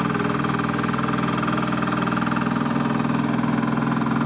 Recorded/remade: recorded